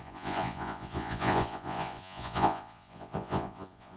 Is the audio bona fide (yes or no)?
no